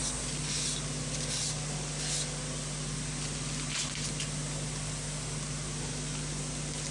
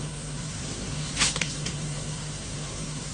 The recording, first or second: first